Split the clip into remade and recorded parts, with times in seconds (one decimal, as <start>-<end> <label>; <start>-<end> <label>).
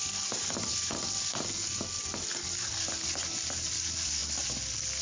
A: 0.0-5.0 recorded